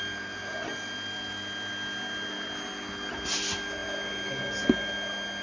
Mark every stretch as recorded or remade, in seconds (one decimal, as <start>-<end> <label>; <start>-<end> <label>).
0.0-5.4 recorded